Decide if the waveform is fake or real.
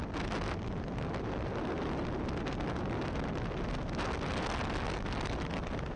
real